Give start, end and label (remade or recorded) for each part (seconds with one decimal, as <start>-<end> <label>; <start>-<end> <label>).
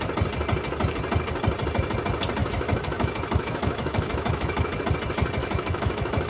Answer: 0.0-2.4 recorded; 2.4-4.8 remade; 4.8-5.4 recorded; 5.4-6.3 remade